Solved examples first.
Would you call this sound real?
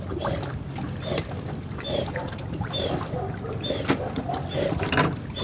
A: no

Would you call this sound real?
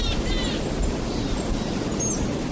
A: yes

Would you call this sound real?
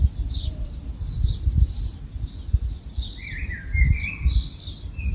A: yes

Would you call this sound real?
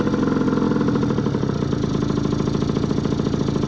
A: yes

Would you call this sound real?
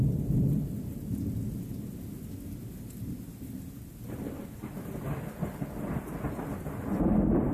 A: yes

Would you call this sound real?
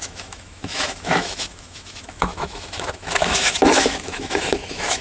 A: no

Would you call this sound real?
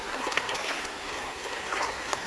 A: no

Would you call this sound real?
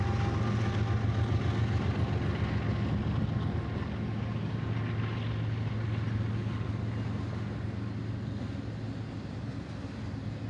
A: yes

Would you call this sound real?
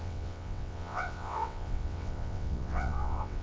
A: no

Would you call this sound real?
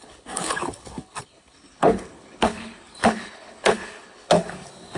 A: no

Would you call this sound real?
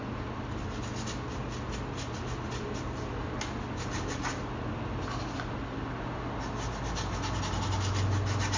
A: yes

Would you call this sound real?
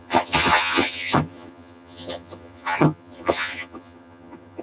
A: no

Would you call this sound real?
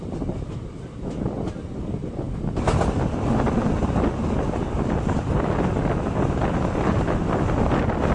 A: yes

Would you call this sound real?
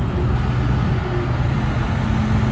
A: yes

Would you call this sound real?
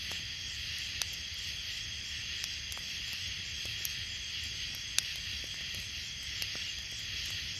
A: yes